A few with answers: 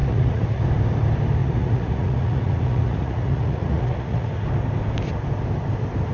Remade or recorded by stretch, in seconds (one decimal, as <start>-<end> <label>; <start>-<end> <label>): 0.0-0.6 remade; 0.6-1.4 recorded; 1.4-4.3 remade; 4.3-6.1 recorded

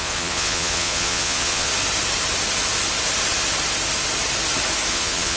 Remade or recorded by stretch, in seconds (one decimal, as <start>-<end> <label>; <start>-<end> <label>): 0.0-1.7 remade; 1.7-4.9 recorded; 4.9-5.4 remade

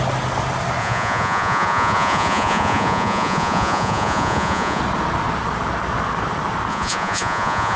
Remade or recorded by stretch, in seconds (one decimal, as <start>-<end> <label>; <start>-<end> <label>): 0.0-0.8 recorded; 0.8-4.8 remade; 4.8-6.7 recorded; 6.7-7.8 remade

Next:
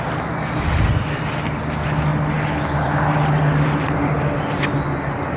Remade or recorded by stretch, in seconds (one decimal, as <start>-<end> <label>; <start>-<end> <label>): 0.0-5.4 recorded

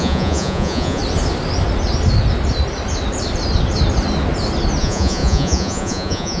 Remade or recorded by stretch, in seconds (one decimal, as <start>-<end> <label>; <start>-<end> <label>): 0.0-1.0 remade; 1.0-4.8 recorded; 4.8-6.4 remade

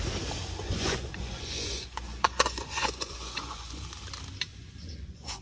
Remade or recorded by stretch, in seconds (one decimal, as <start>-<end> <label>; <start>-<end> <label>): 0.0-0.6 recorded; 0.6-3.8 remade; 3.8-4.5 recorded; 4.5-5.4 remade

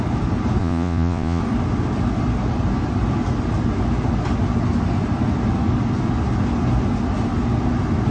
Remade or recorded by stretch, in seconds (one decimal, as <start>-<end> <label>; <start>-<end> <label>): 0.0-0.6 recorded; 0.6-1.4 remade; 1.4-8.1 recorded